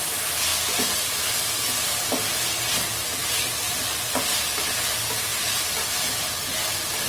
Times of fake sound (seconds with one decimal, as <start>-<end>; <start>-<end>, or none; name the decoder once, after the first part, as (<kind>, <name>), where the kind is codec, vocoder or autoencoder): none